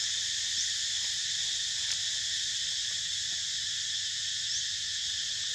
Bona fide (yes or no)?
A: yes